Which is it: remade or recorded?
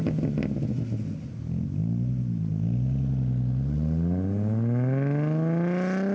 recorded